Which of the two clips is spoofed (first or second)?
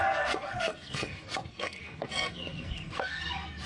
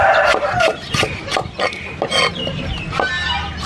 first